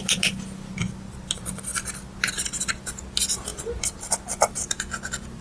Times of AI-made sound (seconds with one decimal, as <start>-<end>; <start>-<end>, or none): none